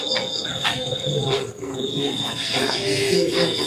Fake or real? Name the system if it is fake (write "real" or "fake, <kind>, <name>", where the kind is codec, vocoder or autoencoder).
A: fake, codec, SNAC